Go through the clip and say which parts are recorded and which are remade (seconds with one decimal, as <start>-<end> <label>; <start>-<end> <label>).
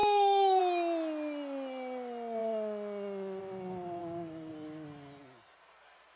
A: 0.0-0.6 remade; 0.6-4.0 recorded; 4.0-4.5 remade; 4.5-6.2 recorded